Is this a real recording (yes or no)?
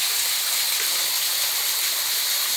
yes